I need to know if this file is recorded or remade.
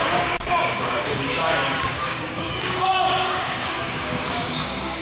remade